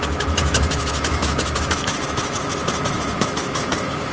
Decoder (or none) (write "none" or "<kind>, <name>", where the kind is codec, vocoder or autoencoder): autoencoder, DAC-VAE